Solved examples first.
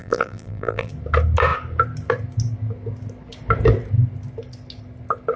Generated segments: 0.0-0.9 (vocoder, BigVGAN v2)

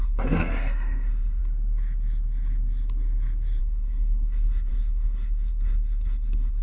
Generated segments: 0.0-1.4 (codec, SNAC); 3.6-6.6

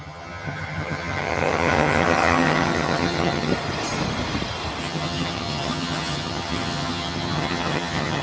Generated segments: 0.0-3.5 (vocoder, HiFi-GAN); 4.8-8.2